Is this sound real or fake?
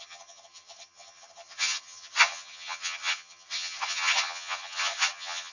fake